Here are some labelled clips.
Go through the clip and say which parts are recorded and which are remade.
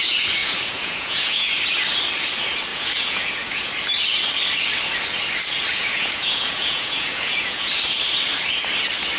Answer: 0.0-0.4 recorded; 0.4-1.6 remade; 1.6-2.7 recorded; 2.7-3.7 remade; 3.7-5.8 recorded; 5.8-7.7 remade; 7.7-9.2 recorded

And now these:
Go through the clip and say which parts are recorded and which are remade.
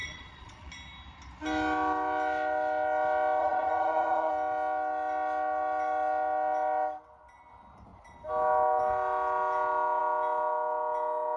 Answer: 0.0-0.7 remade; 0.7-3.4 recorded; 3.4-4.3 remade; 4.3-11.4 recorded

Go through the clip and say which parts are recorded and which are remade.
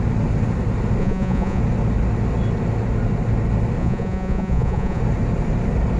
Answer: 0.0-1.0 recorded; 1.0-1.6 remade; 1.6-3.8 recorded; 3.8-5.0 remade; 5.0-6.0 recorded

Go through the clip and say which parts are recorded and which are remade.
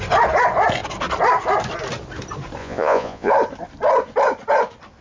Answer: 0.0-2.6 recorded; 2.6-3.3 remade; 3.3-5.0 recorded